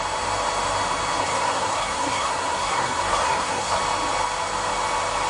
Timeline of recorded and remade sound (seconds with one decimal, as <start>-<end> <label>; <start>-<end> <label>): 0.0-1.2 recorded; 1.2-3.8 remade; 3.8-5.3 recorded

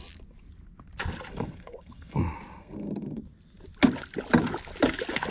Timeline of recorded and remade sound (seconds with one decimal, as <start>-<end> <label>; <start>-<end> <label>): 0.0-1.3 recorded; 1.3-2.2 remade; 2.2-2.6 recorded; 2.6-3.2 remade; 3.2-5.3 recorded

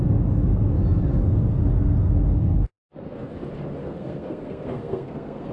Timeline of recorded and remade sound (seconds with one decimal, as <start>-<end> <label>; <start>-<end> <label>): 0.0-1.1 recorded; 1.1-3.3 remade; 3.3-3.8 recorded; 3.8-5.5 remade

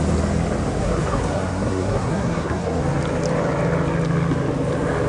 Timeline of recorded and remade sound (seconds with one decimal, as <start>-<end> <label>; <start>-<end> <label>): 0.0-0.8 recorded; 0.8-2.8 remade; 2.8-5.1 recorded

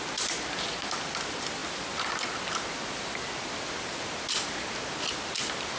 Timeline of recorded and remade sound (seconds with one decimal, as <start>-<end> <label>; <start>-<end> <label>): 0.0-5.8 recorded

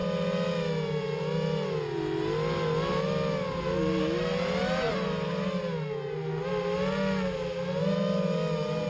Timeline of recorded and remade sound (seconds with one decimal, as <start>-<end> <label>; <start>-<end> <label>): 0.0-8.9 recorded

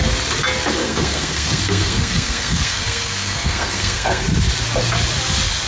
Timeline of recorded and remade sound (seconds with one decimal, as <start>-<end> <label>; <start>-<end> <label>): 0.0-0.8 recorded; 0.8-4.2 remade; 4.2-5.7 recorded

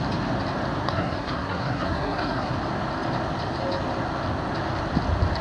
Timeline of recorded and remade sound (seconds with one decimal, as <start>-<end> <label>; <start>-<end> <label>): 0.0-0.8 recorded; 0.8-2.5 remade; 2.5-5.4 recorded